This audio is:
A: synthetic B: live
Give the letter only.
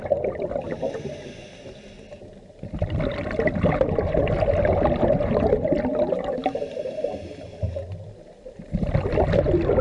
B